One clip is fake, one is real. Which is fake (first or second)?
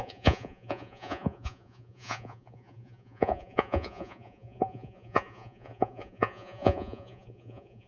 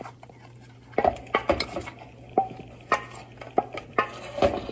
first